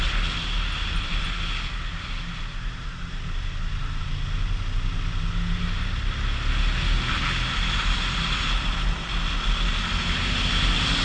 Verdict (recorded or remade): recorded